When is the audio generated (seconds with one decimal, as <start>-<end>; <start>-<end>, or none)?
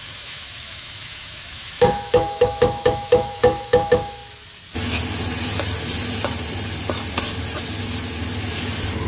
0.0-4.2